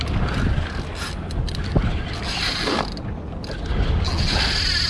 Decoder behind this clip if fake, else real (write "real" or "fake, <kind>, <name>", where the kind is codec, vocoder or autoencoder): real